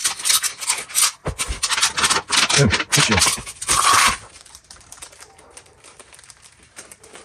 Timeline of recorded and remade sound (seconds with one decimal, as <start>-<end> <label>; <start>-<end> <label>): 0.0-3.6 recorded; 3.6-7.2 remade

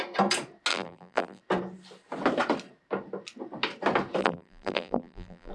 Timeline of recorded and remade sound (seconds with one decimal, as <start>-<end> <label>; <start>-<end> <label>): 0.0-0.7 recorded; 0.7-1.4 remade; 1.4-4.2 recorded; 4.2-5.5 remade

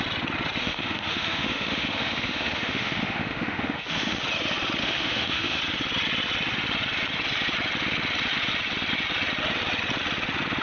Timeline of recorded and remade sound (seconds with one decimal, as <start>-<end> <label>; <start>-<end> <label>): 0.0-0.6 recorded; 0.6-4.2 remade; 4.2-4.8 recorded; 4.8-5.6 remade; 5.6-10.6 recorded

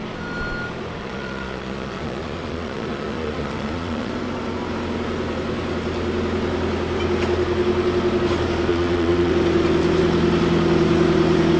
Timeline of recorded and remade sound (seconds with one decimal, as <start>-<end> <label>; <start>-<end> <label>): 0.0-1.0 recorded; 1.0-4.1 remade; 4.1-8.7 recorded; 8.7-9.3 remade; 9.3-11.6 recorded